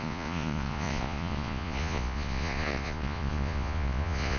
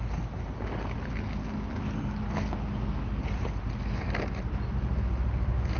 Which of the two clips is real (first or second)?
second